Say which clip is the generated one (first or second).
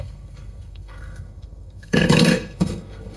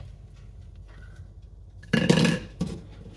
first